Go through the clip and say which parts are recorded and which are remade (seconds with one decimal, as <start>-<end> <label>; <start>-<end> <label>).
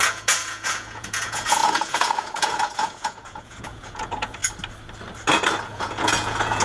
0.0-4.4 remade; 4.4-5.6 recorded; 5.6-6.6 remade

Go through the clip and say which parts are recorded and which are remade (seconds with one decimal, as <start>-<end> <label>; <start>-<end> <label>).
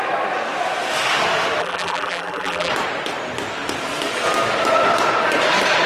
0.0-1.6 recorded; 1.6-2.7 remade; 2.7-5.9 recorded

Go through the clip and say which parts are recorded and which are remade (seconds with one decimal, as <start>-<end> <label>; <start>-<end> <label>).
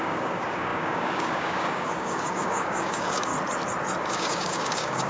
0.0-3.3 remade; 3.3-4.1 recorded; 4.1-5.1 remade